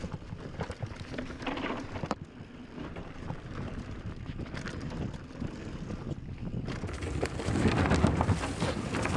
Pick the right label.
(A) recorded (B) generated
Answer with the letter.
A